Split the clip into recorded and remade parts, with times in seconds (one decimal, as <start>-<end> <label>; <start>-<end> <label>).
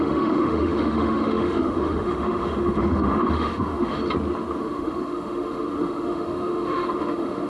0.0-4.0 remade; 4.0-4.6 recorded; 4.6-7.5 remade